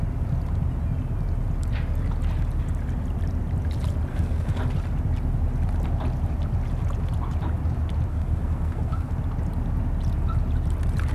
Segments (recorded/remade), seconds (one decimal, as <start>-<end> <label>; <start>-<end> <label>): 0.0-4.1 recorded; 4.1-4.6 remade; 4.6-8.1 recorded; 8.1-9.1 remade; 9.1-11.1 recorded